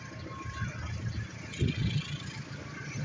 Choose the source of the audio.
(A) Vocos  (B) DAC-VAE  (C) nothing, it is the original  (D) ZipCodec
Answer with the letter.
C